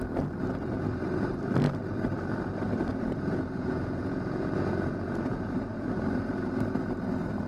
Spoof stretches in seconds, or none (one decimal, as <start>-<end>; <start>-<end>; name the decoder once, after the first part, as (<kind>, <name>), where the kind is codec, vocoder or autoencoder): 2.9-5.5 (vocoder, Vocos)